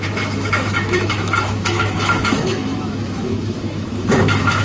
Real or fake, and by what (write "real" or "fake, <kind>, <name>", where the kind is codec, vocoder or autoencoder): fake, autoencoder, DAC-VAE